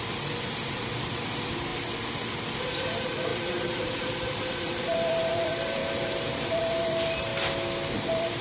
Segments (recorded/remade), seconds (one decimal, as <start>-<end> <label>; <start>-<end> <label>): 0.0-1.7 remade; 1.7-2.6 recorded; 2.6-7.3 remade; 7.3-7.9 recorded; 7.9-8.4 remade